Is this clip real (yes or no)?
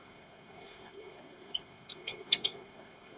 no